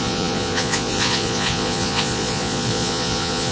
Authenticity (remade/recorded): remade